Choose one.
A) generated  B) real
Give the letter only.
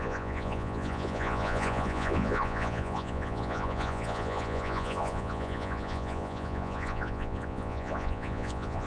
A